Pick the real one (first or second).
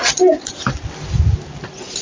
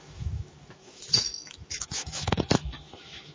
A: first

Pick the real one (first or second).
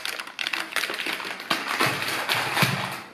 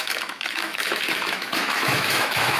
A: first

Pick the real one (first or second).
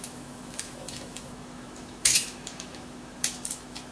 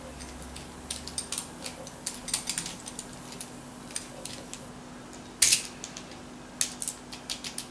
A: second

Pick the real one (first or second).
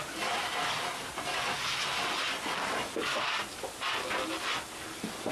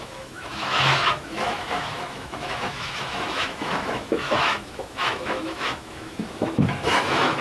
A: first